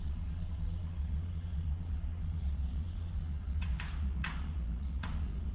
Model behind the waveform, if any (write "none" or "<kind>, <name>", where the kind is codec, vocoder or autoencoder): vocoder, Vocos